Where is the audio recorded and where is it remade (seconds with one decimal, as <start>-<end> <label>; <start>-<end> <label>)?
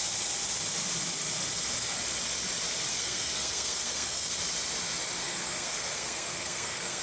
0.0-2.9 recorded; 2.9-4.4 remade; 4.4-5.2 recorded; 5.2-7.0 remade